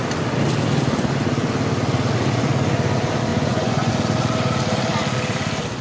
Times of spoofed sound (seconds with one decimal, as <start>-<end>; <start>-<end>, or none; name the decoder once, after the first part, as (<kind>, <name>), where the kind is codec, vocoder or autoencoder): 3.3-3.9 (vocoder, Vocos)